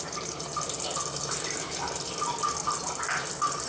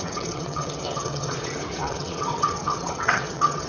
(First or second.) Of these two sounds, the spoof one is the second